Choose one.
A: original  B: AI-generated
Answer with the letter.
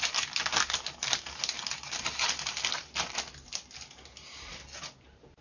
A